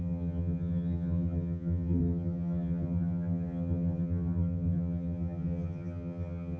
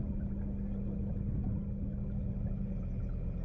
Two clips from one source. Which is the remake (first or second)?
first